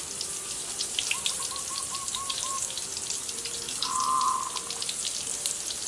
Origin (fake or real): fake